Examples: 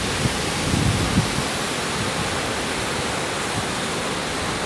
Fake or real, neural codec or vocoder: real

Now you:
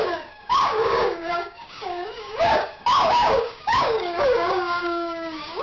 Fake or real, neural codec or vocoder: fake, codec, DAC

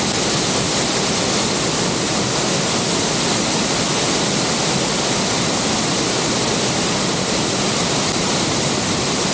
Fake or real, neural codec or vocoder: real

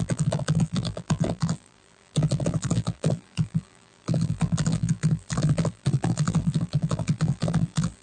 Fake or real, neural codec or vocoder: fake, vocoder, BigVGAN v2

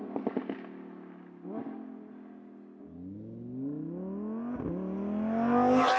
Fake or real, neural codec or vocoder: real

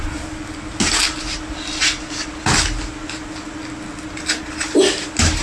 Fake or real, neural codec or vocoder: real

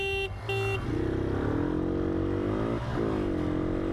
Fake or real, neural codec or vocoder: real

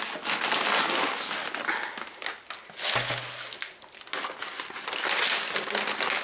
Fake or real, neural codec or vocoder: real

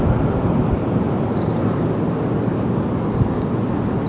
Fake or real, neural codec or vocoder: real